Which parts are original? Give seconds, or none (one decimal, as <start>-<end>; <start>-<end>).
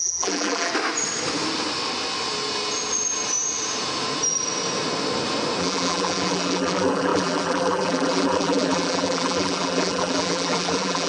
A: 0.7-5.6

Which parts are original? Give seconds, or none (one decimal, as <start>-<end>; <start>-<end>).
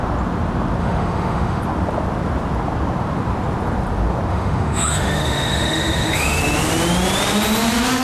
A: 0.0-0.8; 1.6-4.3; 6.4-8.0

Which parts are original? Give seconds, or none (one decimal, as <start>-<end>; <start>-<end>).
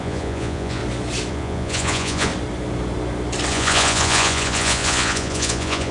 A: 0.8-1.3; 2.3-3.5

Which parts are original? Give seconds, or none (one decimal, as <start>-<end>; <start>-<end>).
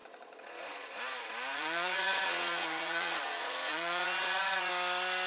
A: 1.0-1.5; 4.7-5.3